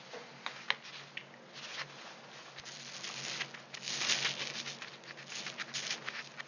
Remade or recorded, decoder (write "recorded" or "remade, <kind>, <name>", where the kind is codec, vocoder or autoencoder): recorded